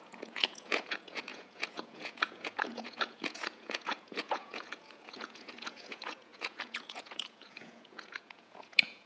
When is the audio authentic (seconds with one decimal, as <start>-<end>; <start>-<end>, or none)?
none